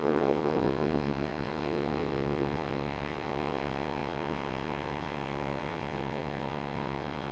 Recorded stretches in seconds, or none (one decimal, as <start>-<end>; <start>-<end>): none